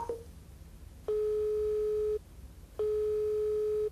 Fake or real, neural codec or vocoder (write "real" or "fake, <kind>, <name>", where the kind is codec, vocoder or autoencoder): real